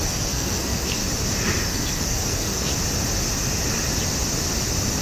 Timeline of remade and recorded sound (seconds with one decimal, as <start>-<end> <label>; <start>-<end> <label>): 0.0-1.0 remade; 1.0-1.6 recorded; 1.6-2.7 remade; 2.7-5.0 recorded